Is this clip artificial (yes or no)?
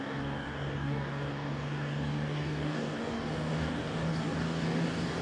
yes